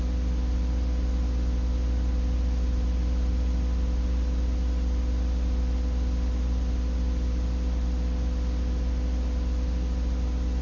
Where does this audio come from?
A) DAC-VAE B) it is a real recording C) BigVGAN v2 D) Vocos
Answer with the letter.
B